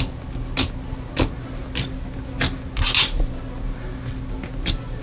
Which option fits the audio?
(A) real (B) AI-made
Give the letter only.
A